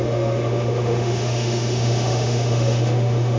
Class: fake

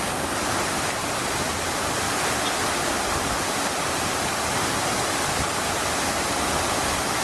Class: real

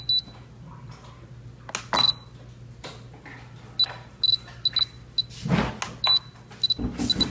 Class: real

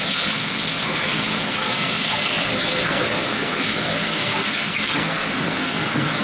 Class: fake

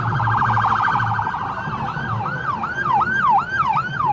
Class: real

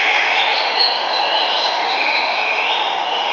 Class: fake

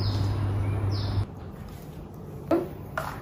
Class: real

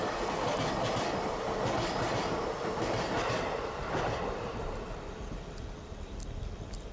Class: real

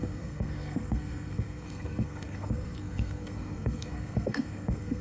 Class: fake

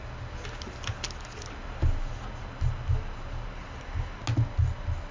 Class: real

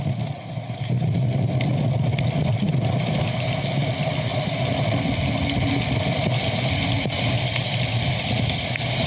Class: real